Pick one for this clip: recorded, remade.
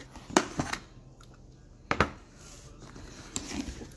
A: recorded